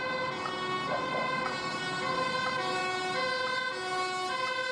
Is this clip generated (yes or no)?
no